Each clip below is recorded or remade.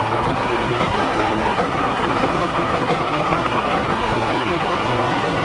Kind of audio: remade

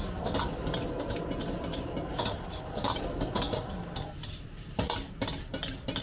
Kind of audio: remade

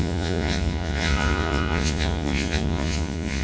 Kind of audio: remade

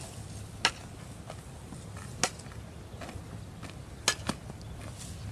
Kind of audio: recorded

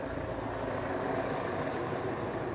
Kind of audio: recorded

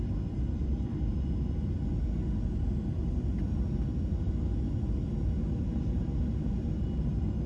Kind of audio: recorded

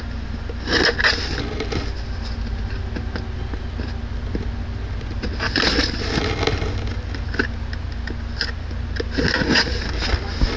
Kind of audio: recorded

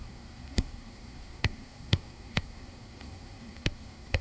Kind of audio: remade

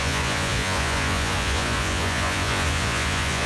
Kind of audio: remade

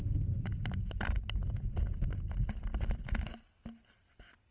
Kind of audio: recorded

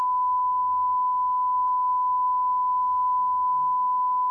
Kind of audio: remade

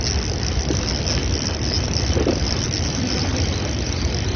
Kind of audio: recorded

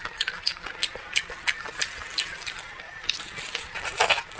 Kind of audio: recorded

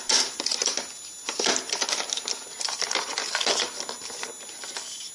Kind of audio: recorded